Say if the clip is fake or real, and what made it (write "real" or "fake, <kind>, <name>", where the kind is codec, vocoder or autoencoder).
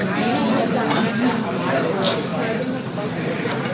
real